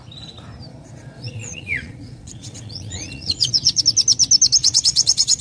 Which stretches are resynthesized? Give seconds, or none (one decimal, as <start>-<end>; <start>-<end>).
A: 0.7-3.8; 4.6-5.4